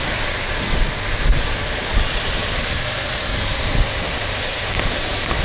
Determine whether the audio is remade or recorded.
recorded